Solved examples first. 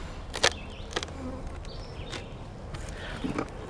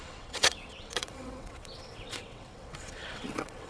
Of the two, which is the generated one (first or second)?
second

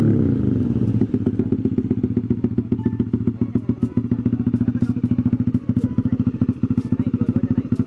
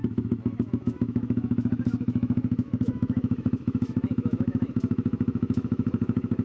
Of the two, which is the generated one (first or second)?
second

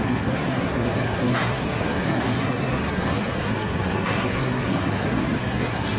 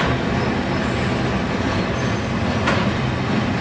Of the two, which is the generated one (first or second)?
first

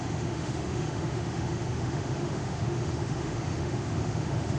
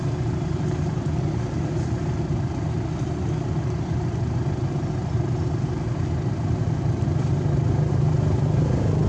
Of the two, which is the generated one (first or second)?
first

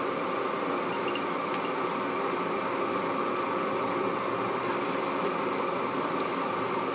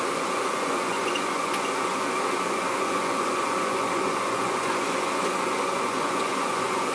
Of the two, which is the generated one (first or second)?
second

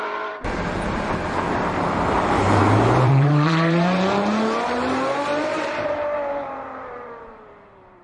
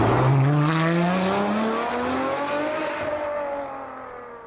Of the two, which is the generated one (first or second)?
first